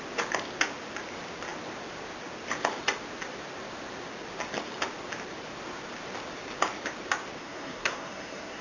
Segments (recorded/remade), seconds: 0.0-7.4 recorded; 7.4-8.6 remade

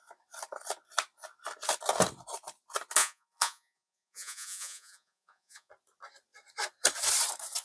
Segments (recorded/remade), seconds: 0.0-3.0 recorded; 3.0-5.7 remade; 5.7-7.6 recorded

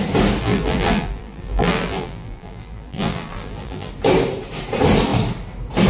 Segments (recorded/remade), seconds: 0.0-0.4 recorded; 0.4-3.9 remade; 3.9-5.9 recorded

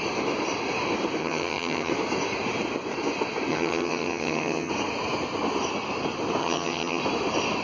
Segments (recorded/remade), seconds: 0.0-1.2 recorded; 1.2-1.9 remade; 1.9-3.5 recorded; 3.5-4.7 remade; 4.7-6.4 recorded; 6.4-7.0 remade; 7.0-7.6 recorded

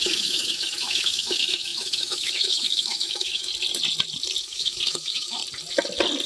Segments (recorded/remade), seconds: 0.0-3.5 remade; 3.5-4.4 recorded; 4.4-5.4 remade; 5.4-6.3 recorded

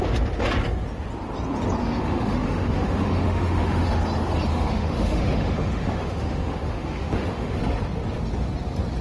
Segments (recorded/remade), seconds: 0.0-1.8 recorded; 1.8-4.0 remade; 4.0-4.5 recorded; 4.5-7.6 remade; 7.6-9.0 recorded

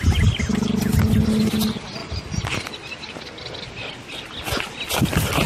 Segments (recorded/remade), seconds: 0.0-5.5 recorded